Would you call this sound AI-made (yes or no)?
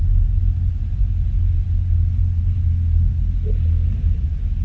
no